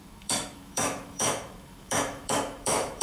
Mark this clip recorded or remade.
remade